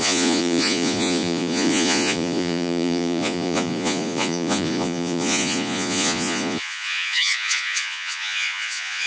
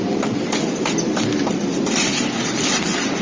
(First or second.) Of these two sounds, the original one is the second